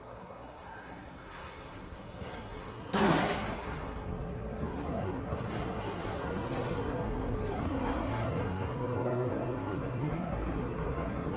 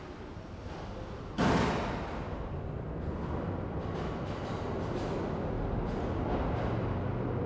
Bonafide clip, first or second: second